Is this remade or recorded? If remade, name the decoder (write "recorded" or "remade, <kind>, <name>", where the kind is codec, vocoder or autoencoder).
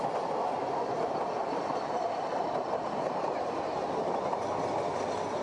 recorded